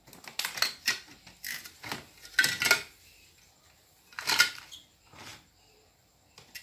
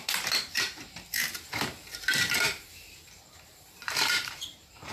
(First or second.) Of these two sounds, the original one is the first